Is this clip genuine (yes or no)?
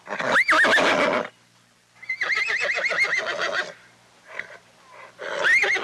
yes